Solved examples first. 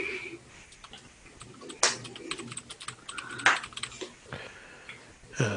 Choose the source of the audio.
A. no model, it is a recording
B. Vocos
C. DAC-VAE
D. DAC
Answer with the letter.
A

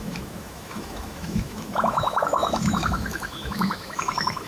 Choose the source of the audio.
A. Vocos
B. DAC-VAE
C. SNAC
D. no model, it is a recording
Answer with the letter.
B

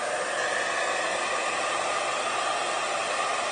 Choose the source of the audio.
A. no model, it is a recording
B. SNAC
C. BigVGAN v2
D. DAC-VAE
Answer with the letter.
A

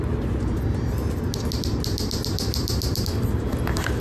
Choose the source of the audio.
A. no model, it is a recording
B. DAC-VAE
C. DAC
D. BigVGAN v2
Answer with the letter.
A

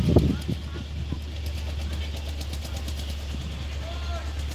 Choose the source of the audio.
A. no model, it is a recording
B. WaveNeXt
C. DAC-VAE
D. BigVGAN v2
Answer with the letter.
A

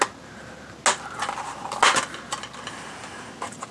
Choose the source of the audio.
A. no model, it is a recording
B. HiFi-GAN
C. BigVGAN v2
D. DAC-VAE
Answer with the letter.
A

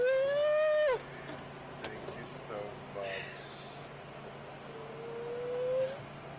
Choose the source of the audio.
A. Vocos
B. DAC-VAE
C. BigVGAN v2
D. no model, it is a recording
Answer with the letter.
D